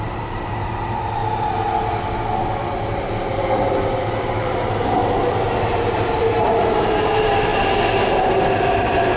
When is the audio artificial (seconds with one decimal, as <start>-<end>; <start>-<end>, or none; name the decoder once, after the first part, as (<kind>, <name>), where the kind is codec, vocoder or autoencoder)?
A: 0.0-1.2 (vocoder, BigVGAN v2); 4.3-5.0; 5.7-7.5; 8.6-9.2